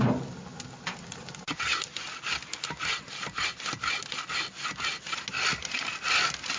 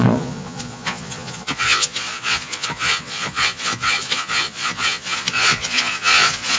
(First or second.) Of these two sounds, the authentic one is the first